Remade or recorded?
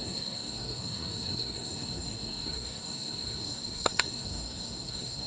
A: remade